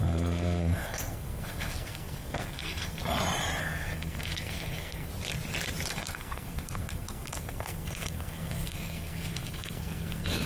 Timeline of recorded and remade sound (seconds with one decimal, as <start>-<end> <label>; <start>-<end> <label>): 0.0-3.0 remade; 3.0-3.6 recorded; 3.6-5.1 remade; 5.1-5.9 recorded; 5.9-10.5 remade

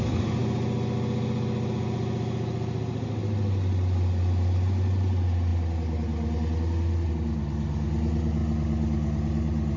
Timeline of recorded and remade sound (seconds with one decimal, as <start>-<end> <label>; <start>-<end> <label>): 0.0-9.8 recorded

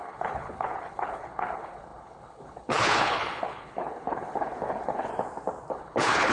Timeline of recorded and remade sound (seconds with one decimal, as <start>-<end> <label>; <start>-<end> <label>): 0.0-5.1 remade; 5.1-5.7 recorded; 5.7-6.3 remade

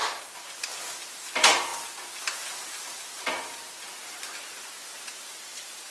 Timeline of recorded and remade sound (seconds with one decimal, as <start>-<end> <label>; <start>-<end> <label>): 0.0-0.8 recorded; 0.8-1.7 remade; 1.7-2.2 recorded; 2.2-3.6 remade; 3.6-4.4 recorded; 4.4-5.9 remade

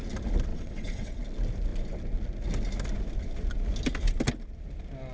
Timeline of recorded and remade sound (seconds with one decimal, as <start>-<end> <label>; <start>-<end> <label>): 0.0-0.5 recorded; 0.5-1.2 remade; 1.2-5.1 recorded

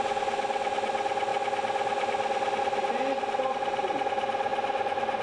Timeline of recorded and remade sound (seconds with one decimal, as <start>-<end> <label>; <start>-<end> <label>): 0.0-5.2 recorded

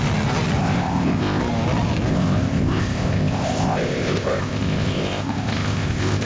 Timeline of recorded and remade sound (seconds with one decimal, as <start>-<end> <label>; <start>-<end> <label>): 0.0-0.6 recorded; 0.6-1.4 remade; 1.4-2.1 recorded; 2.1-6.3 remade